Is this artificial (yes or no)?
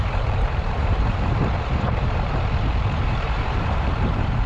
yes